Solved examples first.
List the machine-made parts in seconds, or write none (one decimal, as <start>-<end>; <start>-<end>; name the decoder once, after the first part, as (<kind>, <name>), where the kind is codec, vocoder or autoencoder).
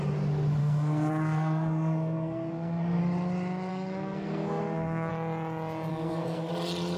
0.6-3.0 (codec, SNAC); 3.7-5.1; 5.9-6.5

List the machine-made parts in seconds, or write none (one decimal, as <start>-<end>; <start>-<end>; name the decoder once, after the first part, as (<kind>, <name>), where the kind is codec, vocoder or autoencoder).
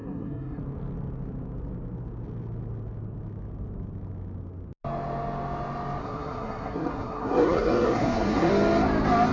0.0-0.6 (codec, SNAC); 6.0-8.5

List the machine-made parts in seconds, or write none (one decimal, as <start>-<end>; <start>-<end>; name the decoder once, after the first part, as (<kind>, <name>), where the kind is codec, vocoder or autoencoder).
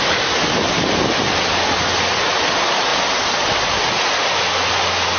none